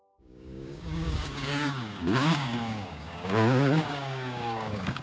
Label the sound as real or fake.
fake